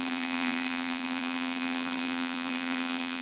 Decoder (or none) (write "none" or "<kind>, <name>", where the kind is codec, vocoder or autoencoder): vocoder, BigVGAN v2